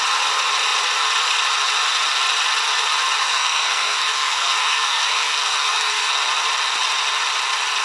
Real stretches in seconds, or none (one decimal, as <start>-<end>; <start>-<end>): 0.0-3.2; 6.1-7.8